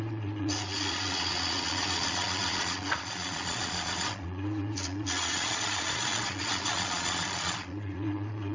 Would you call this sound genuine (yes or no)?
no